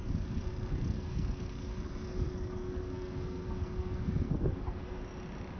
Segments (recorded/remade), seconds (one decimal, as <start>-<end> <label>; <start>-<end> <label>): 0.0-5.0 remade; 5.0-5.6 recorded